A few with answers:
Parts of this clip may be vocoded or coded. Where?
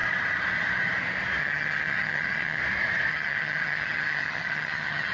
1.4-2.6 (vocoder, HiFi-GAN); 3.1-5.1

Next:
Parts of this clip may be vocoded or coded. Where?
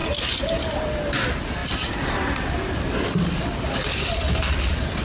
none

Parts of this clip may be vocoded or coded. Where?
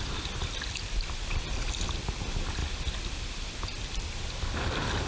none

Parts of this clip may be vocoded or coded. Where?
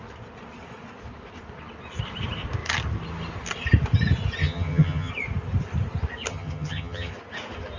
4.4-5.1 (vocoder, HiFi-GAN); 6.3-7.1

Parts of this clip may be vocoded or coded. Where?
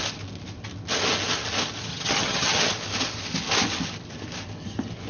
1.9-2.6 (vocoder, HiFi-GAN)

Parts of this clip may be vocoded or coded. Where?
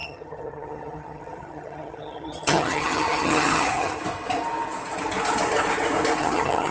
0.0-4.0 (vocoder, HiFi-GAN); 6.2-6.7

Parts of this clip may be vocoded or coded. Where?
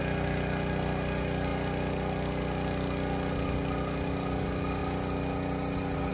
none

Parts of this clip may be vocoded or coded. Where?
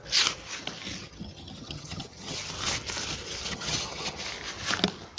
1.0-2.4 (vocoder, HiFi-GAN); 3.5-4.2